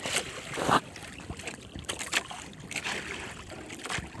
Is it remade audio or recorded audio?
recorded